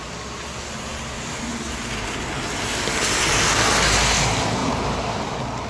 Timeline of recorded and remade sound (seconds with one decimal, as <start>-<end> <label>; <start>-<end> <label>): 0.0-5.7 recorded